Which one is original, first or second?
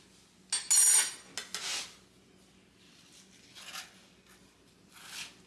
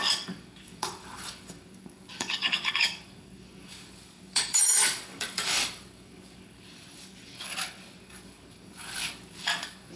first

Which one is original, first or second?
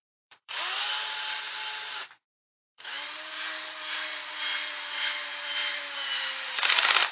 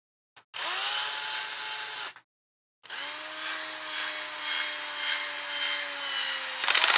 second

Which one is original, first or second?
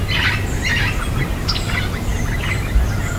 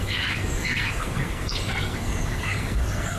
first